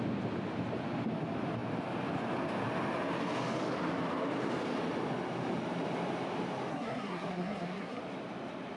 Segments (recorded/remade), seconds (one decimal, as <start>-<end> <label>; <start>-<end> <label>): 0.0-6.7 recorded; 6.7-8.0 remade; 8.0-8.8 recorded